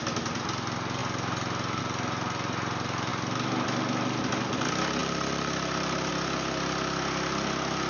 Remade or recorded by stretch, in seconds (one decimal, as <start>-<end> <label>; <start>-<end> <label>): 0.0-5.0 recorded; 5.0-6.1 remade; 6.1-7.9 recorded